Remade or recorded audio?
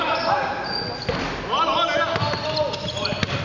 recorded